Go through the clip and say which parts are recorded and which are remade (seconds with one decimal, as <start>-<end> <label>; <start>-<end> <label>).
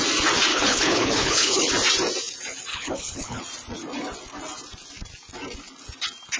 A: 0.0-0.5 recorded; 0.5-1.7 remade; 1.7-2.7 recorded; 2.7-3.4 remade; 3.4-6.4 recorded